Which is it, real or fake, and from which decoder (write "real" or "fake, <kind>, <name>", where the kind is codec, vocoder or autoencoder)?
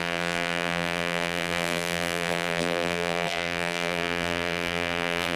fake, vocoder, BigVGAN v2